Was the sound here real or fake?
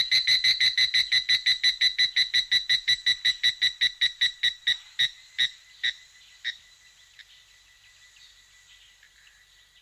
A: real